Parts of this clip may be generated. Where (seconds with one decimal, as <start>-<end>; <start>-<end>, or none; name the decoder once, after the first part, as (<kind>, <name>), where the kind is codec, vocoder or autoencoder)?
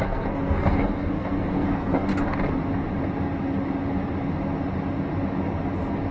0.0-2.1 (codec, SNAC)